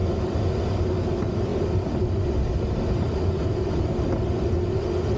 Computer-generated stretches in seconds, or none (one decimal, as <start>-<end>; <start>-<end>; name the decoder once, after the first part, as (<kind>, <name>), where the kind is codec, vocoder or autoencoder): none